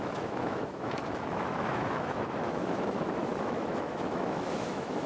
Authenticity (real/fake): fake